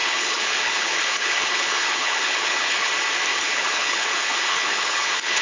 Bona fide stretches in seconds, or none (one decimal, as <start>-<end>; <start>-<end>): 2.9-3.3